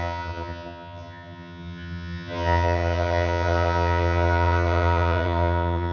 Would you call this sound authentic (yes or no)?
no